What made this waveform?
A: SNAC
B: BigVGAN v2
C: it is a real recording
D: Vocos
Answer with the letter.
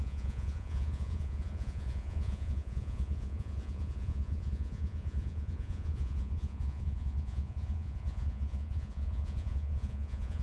D